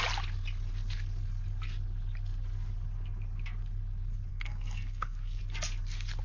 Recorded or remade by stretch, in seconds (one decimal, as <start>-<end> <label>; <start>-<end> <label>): 0.0-4.3 recorded; 4.3-5.4 remade; 5.4-6.2 recorded